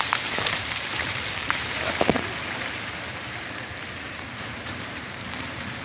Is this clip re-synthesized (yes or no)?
yes